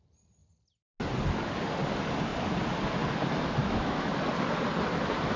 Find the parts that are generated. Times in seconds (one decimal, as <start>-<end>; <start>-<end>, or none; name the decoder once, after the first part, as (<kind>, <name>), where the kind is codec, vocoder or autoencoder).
3.6-4.1 (autoencoder, DAC-VAE)